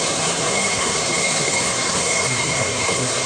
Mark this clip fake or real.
fake